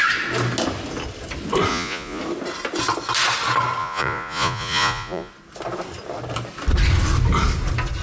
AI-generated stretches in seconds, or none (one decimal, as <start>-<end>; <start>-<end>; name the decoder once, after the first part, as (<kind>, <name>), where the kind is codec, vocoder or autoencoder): 1.7-2.2 (vocoder, Vocos); 3.8-5.3